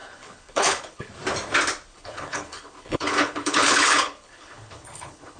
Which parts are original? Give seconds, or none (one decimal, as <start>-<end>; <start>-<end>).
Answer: 1.1-1.9